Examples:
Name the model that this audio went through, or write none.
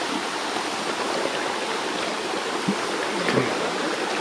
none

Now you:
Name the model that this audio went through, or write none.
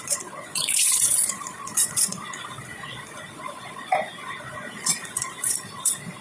vocoder, Vocos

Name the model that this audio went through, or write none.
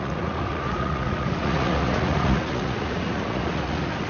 vocoder, Vocos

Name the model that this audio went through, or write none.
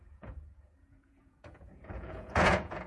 vocoder, Vocos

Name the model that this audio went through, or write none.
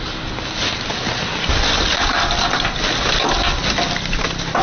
none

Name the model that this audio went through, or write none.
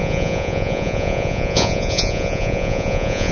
vocoder, Vocos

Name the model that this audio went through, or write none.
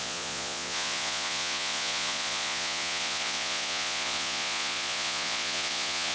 vocoder, Vocos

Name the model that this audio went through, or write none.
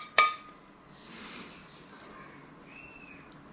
none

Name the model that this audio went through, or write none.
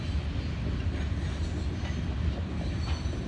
none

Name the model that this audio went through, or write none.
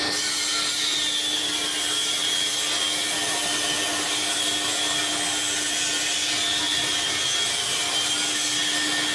none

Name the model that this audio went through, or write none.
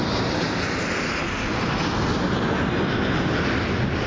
none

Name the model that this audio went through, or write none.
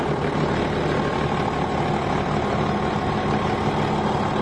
none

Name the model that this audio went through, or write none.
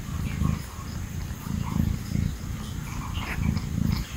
none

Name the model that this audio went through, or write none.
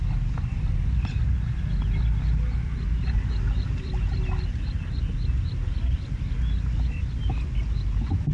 none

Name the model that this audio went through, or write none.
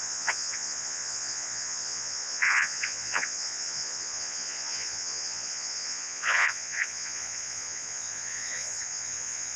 vocoder, Vocos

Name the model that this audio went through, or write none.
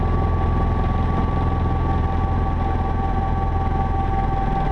none